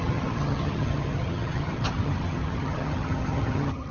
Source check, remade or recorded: remade